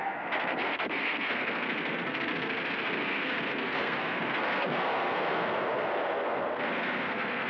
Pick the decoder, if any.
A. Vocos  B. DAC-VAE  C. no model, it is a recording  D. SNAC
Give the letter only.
D